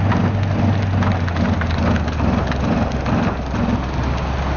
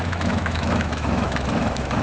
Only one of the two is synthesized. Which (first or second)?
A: second